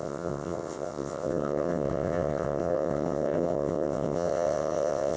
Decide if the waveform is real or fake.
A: fake